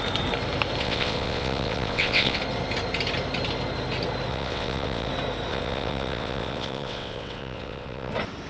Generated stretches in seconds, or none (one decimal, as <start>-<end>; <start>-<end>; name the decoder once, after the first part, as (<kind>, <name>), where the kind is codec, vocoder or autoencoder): 0.8-2.4 (vocoder, WaveNeXt); 4.3-5.1; 5.5-8.1

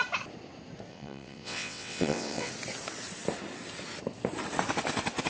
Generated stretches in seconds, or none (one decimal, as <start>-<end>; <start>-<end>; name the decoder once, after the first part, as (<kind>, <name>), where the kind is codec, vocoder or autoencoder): 0.9-2.5 (vocoder, WaveNeXt)

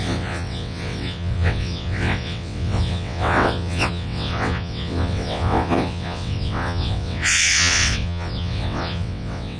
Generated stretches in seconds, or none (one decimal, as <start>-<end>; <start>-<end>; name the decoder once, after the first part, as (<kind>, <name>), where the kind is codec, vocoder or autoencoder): 0.0-9.6 (vocoder, WaveNeXt)

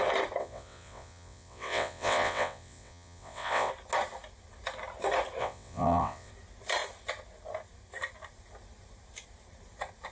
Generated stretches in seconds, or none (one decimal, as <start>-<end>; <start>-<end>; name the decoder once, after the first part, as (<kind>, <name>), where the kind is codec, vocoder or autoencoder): 0.4-3.7 (vocoder, WaveNeXt); 5.4-6.3

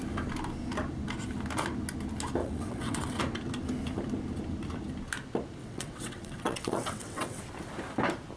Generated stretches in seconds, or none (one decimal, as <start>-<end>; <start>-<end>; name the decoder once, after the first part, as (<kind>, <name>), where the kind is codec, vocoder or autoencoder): 2.4-3.2 (vocoder, WaveNeXt); 5.6-7.4